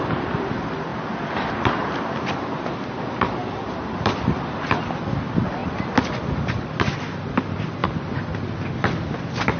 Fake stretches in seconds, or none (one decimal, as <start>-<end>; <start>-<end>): 0.0-0.9; 1.5-5.6; 6.3-9.6